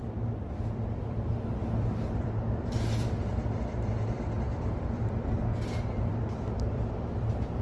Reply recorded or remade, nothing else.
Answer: remade